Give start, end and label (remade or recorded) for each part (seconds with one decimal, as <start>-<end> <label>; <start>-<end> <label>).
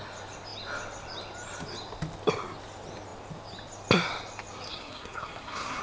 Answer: 0.0-4.7 recorded; 4.7-5.8 remade